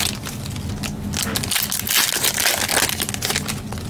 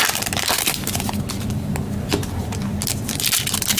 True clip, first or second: first